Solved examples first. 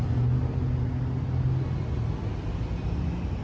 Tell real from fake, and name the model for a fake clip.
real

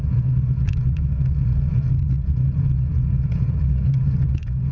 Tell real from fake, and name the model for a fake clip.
fake, vocoder, Vocos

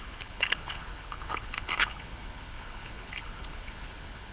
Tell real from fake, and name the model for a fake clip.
fake, codec, HILCodec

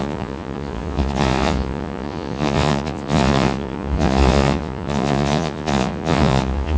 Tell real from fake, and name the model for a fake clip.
fake, vocoder, Vocos